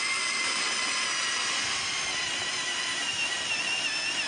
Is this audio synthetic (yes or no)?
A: no